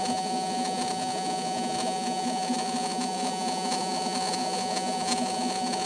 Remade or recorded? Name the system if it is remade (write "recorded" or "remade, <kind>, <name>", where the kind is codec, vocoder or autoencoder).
remade, vocoder, Vocos